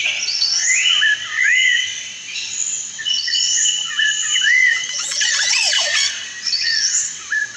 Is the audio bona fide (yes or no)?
no